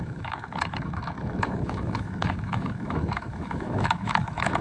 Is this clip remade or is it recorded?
remade